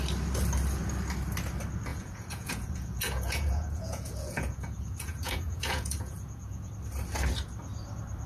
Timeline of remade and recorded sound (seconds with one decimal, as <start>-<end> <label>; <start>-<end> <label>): 0.0-1.9 recorded; 1.9-6.7 remade; 6.7-8.3 recorded